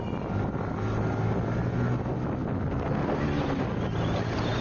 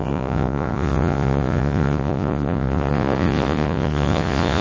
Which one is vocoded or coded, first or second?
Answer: second